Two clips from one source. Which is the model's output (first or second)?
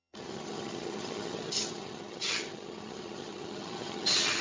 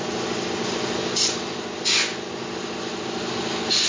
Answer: first